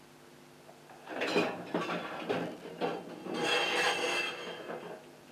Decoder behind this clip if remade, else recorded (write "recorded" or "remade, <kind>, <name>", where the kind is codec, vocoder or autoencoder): recorded